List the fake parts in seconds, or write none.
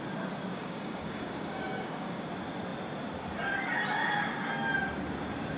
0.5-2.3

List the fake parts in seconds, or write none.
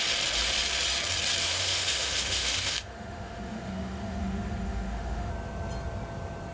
1.4-5.3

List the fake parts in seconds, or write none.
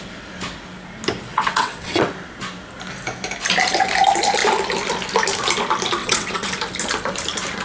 1.3-2.1; 6.0-6.5